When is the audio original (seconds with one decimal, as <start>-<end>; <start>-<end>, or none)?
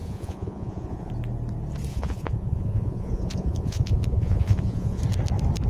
1.1-1.9; 5.0-5.7